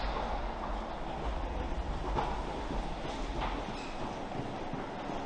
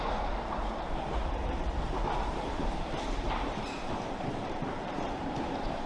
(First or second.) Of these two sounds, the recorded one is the first